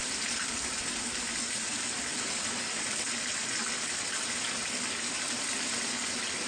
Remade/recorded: recorded